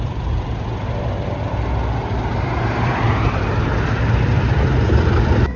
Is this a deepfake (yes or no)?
yes